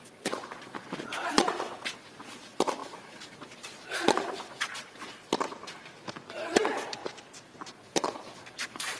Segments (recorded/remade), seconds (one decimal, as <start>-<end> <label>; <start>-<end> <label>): 0.0-5.2 remade; 5.2-6.3 recorded; 6.3-7.0 remade; 7.0-7.7 recorded; 7.7-9.0 remade